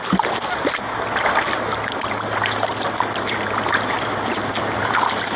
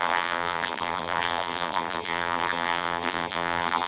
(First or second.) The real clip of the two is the first